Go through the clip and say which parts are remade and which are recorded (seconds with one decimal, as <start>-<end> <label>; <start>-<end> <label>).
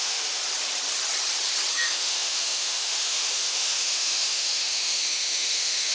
0.0-0.4 remade; 0.4-1.7 recorded; 1.7-5.9 remade